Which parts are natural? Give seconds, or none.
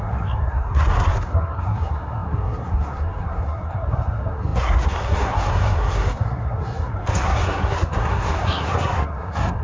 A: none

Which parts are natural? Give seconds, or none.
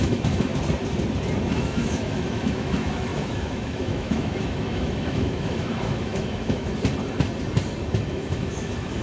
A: 0.5-1.5; 6.7-8.1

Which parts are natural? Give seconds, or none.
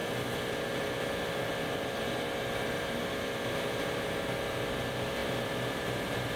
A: 0.8-5.2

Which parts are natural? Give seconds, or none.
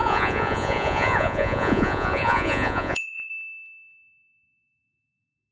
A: 3.3-5.5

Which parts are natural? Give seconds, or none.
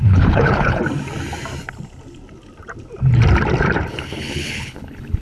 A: 0.8-3.9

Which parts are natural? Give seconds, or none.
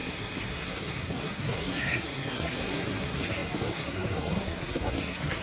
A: none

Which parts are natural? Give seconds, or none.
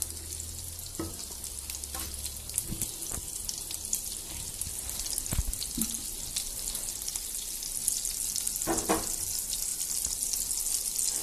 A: 0.0-11.2